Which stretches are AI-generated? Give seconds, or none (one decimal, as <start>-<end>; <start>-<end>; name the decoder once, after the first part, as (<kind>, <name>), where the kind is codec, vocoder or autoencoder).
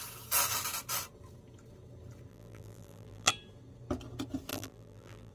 2.3-3.3 (vocoder, BigVGAN v2); 4.5-5.3